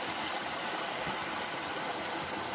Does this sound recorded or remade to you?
recorded